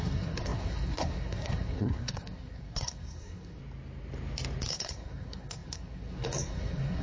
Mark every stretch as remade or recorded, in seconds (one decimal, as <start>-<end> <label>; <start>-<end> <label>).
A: 0.0-3.6 remade; 3.6-4.7 recorded; 4.7-7.0 remade